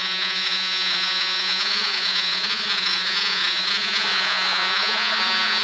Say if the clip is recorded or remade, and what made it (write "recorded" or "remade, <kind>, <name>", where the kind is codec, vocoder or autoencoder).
remade, vocoder, Vocos